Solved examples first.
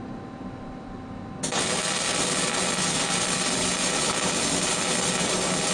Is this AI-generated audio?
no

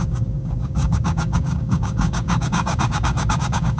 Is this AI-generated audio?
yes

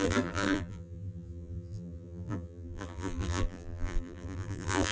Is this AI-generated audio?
yes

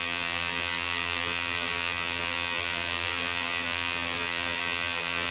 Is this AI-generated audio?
yes